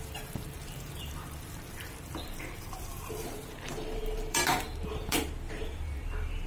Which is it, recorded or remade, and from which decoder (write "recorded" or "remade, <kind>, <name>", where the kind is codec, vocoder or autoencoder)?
remade, vocoder, BigVGAN v2